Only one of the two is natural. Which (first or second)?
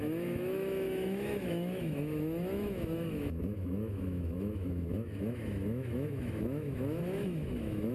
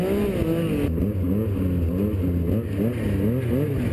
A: second